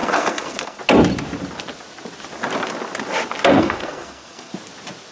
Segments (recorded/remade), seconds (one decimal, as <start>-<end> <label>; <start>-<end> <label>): 0.0-0.8 remade; 0.8-3.5 recorded; 3.5-4.5 remade; 4.5-5.1 recorded